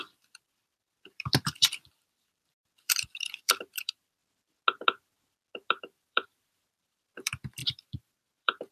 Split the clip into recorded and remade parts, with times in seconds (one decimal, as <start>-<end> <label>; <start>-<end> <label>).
0.0-4.2 remade; 4.2-5.7 recorded; 5.7-8.7 remade